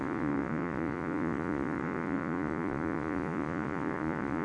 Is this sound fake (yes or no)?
yes